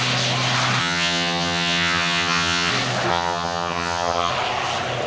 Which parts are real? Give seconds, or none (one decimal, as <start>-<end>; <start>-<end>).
0.0-0.8; 2.7-3.1; 4.3-5.1